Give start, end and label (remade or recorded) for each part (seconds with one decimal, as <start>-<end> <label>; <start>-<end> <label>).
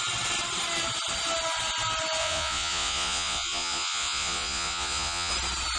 0.0-2.2 recorded; 2.2-5.3 remade; 5.3-5.8 recorded